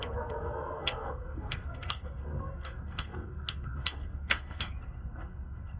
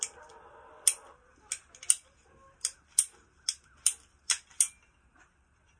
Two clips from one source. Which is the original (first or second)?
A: second